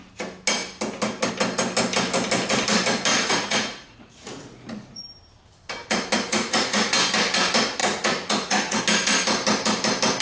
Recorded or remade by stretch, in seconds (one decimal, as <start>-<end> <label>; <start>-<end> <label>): 0.0-3.1 recorded; 3.1-5.0 remade; 5.0-6.3 recorded; 6.3-6.9 remade; 6.9-7.8 recorded; 7.8-8.8 remade; 8.8-10.2 recorded